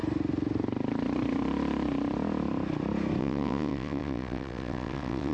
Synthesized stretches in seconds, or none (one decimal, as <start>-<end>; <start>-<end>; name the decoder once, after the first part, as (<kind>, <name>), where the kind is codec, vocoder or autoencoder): 3.2-5.3 (vocoder, WaveNeXt)